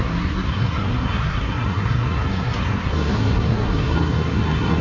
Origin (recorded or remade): remade